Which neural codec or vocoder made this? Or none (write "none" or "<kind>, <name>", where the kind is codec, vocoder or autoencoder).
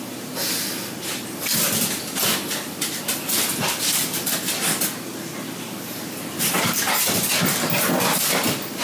none